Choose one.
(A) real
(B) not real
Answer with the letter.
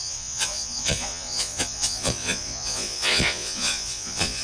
B